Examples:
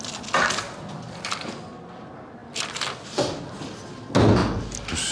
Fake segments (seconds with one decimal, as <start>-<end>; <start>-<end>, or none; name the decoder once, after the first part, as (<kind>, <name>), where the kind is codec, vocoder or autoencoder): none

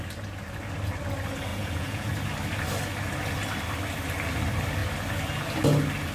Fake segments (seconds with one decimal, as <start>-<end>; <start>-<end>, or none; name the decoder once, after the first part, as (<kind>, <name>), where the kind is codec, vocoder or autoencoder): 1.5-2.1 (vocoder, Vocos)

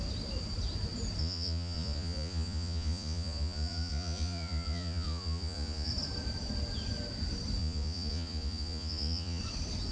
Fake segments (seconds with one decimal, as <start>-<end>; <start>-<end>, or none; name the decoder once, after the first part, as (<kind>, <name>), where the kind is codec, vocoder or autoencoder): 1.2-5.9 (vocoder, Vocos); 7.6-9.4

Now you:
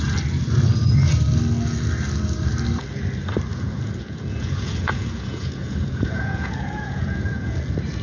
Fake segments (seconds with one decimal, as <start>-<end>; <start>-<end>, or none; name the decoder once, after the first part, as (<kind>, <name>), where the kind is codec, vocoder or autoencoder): 3.5-7.6 (vocoder, Vocos)

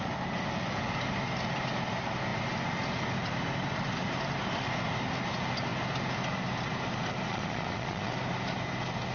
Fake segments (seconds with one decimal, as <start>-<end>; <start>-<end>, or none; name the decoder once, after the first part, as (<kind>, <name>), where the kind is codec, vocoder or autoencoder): 7.3-8.1 (vocoder, Vocos)

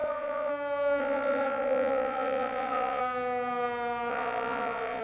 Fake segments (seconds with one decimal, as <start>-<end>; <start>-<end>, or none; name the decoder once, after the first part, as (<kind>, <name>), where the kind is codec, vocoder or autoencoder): 0.0-0.5 (vocoder, Vocos); 1.0-3.0; 4.1-5.0